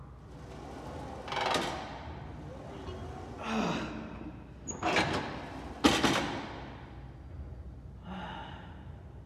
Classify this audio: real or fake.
real